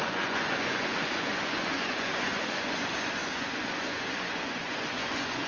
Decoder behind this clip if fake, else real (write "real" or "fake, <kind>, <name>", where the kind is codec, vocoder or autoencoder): fake, vocoder, Vocos